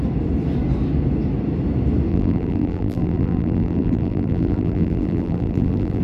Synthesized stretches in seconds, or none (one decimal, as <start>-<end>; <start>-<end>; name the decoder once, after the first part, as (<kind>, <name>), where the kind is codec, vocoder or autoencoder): 2.1-6.0 (vocoder, BigVGAN v2)